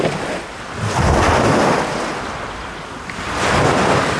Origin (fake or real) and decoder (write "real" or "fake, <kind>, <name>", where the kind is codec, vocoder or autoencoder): real